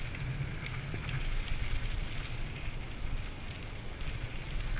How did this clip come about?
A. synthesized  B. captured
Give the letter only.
B